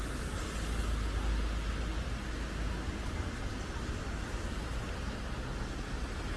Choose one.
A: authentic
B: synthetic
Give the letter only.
A